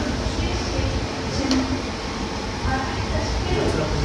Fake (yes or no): no